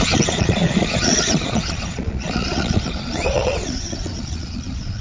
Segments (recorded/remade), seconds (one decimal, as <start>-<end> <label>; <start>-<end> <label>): 0.0-5.0 remade

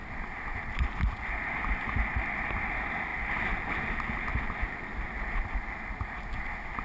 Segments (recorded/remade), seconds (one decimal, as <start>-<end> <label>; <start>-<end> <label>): 0.0-6.8 recorded